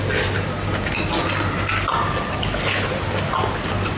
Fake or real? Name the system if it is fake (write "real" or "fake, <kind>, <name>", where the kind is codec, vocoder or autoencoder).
real